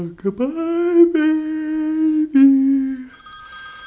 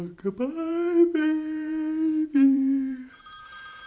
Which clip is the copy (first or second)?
second